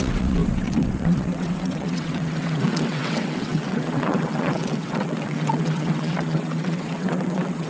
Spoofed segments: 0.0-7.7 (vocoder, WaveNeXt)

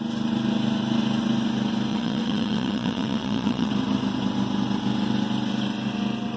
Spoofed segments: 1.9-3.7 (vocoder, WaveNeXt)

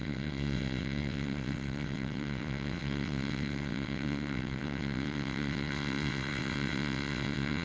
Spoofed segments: 0.0-7.6 (vocoder, WaveNeXt)